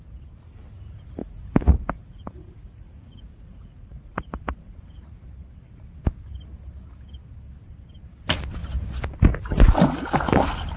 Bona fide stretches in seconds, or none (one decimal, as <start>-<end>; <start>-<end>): 0.0-1.2; 5.2-10.8